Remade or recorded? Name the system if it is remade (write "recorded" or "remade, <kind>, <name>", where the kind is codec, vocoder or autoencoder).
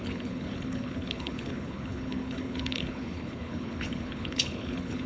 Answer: remade, codec, HILCodec